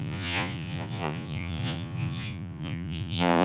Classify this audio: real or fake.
fake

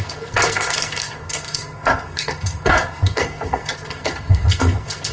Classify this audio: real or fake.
fake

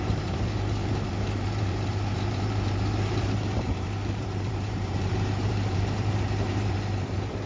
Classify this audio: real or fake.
fake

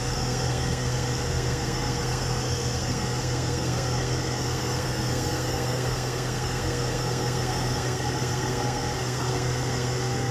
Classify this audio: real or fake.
fake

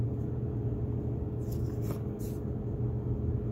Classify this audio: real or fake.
real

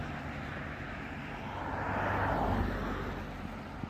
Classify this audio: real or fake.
real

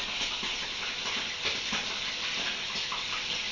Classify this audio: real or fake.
real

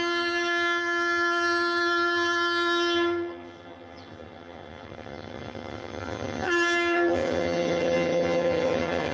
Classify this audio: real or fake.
fake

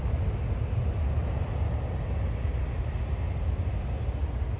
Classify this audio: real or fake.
real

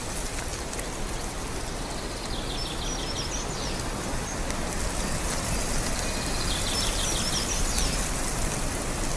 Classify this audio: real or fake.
real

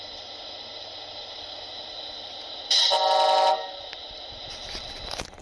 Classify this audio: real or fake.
real